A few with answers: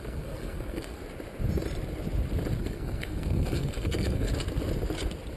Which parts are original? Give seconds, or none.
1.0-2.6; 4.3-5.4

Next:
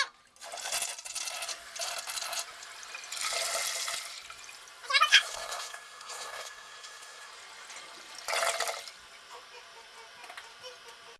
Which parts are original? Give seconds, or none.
0.0-5.1; 7.3-11.2

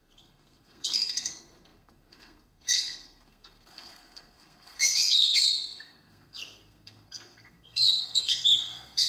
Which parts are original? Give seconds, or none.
none